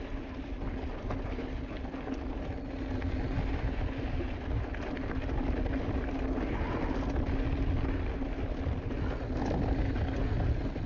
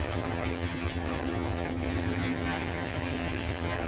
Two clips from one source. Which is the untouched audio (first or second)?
first